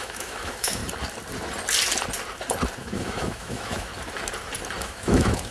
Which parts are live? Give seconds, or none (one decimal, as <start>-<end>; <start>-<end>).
0.8-2.8; 3.9-4.8